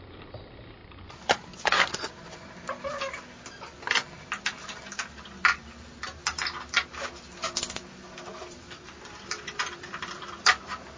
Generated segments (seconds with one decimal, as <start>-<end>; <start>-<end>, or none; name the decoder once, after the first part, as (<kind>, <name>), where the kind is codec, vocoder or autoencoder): 0.0-0.8 (vocoder, BigVGAN v2); 1.9-2.9; 7.9-11.0

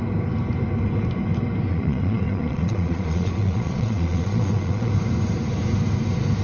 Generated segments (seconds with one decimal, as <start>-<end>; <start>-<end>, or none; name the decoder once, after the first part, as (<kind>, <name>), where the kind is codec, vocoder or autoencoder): 1.7-4.9 (vocoder, Vocos)

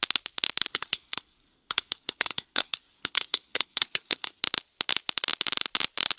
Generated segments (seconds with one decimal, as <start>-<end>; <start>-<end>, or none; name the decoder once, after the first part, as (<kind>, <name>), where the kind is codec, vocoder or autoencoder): 0.7-4.4 (codec, SNAC)

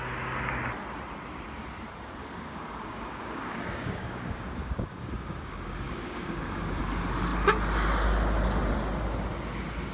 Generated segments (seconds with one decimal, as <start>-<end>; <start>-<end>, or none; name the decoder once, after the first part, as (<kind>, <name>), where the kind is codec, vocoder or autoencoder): 2.2-6.8 (codec, DAC)

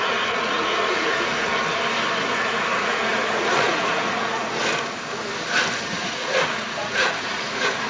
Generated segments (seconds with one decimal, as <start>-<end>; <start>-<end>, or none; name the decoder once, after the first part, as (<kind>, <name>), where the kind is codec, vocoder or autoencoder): 0.0-1.5 (vocoder, Vocos); 2.3-4.6; 6.0-7.9

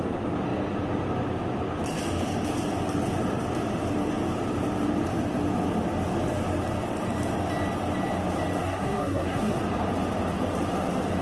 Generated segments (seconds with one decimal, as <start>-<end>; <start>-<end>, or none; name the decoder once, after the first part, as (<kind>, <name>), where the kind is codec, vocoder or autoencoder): 8.6-9.6 (codec, SNAC)

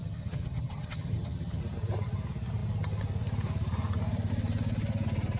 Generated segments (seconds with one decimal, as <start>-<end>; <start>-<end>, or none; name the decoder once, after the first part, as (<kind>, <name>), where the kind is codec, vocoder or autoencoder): 0.0-1.6 (vocoder, HiFi-GAN)